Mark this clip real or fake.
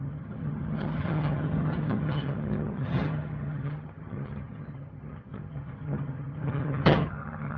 fake